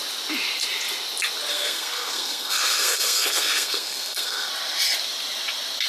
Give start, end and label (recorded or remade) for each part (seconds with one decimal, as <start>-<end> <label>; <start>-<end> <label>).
0.0-1.5 recorded; 1.5-4.5 remade; 4.5-5.9 recorded

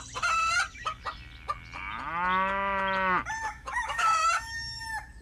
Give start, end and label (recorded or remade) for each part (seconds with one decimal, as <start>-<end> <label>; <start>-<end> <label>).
0.0-3.4 recorded; 3.4-4.8 remade; 4.8-5.2 recorded

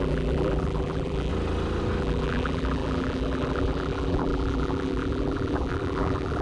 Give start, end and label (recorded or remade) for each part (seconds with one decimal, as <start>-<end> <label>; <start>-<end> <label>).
0.0-1.3 remade; 1.3-2.0 recorded; 2.0-6.4 remade

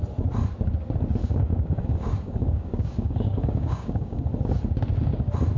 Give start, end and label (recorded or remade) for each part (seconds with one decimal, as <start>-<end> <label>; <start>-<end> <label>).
0.0-1.2 recorded; 1.2-4.2 remade; 4.2-5.6 recorded

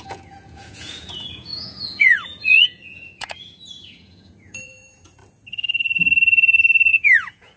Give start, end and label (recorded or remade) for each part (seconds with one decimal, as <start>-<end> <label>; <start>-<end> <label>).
0.0-5.2 remade; 5.2-6.9 recorded; 6.9-7.6 remade

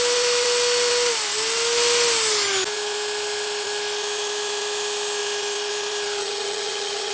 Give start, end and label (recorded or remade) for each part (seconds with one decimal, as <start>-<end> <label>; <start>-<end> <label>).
0.0-6.2 recorded; 6.2-7.1 remade